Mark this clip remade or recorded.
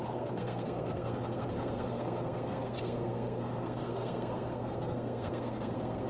remade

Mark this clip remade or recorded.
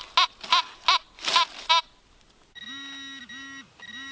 recorded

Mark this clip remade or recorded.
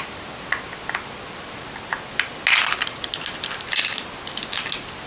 recorded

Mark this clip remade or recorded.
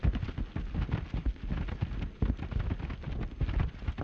recorded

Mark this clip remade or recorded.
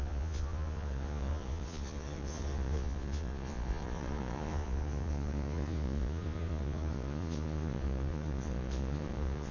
remade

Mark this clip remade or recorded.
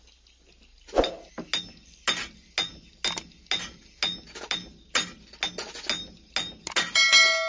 recorded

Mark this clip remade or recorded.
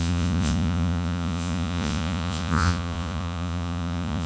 remade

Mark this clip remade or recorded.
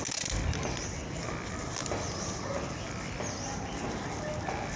recorded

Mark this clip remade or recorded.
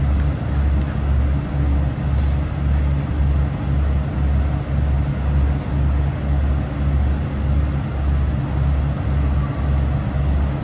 recorded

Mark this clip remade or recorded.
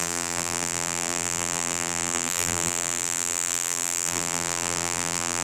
remade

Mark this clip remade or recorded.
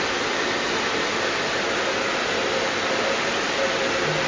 recorded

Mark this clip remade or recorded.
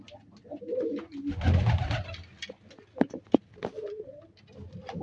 recorded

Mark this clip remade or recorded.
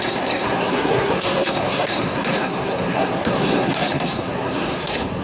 remade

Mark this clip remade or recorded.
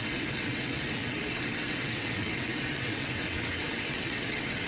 remade